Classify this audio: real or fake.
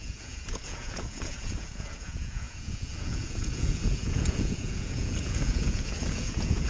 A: fake